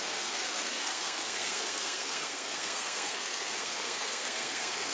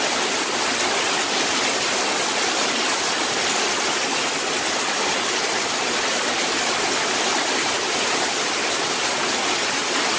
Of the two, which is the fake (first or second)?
first